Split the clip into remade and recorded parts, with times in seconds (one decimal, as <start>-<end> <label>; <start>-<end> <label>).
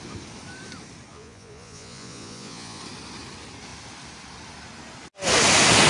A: 0.0-1.1 recorded; 1.1-2.8 remade; 2.8-5.9 recorded